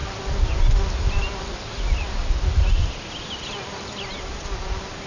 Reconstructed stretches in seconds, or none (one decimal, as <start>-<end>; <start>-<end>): none